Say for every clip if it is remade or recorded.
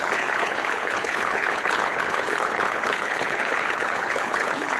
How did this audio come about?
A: remade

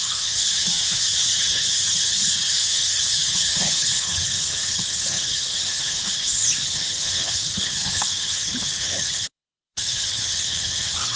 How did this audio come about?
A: remade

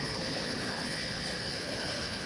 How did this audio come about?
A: remade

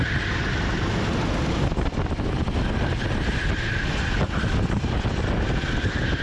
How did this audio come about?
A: recorded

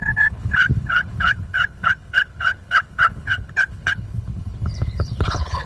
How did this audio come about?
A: remade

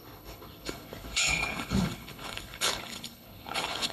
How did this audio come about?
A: remade